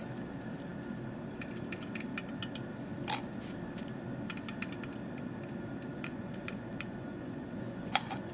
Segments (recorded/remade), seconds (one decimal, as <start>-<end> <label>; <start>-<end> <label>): 0.0-5.9 recorded; 5.9-8.3 remade